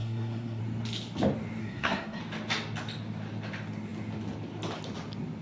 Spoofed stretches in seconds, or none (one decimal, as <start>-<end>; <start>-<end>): 0.0-0.6; 1.6-2.2